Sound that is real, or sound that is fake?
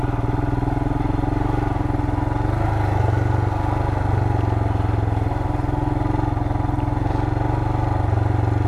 real